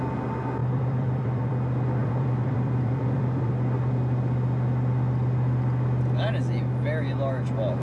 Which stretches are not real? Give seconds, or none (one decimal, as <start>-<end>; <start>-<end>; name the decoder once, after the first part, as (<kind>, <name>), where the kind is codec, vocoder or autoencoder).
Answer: 0.6-1.5 (vocoder, BigVGAN v2); 2.0-3.5